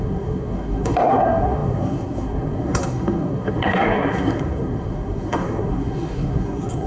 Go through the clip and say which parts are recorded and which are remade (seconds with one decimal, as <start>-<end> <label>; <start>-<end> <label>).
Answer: 0.0-6.9 remade